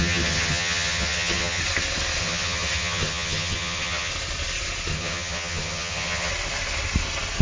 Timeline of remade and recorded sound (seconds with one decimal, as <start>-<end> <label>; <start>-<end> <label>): 0.0-1.6 remade; 1.6-2.2 recorded; 2.2-4.1 remade; 4.1-4.9 recorded; 4.9-6.3 remade; 6.3-7.4 recorded